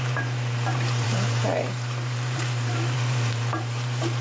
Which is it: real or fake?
fake